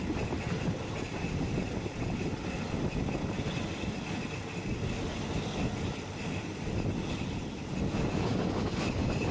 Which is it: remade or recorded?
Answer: recorded